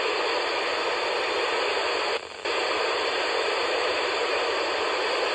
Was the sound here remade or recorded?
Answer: recorded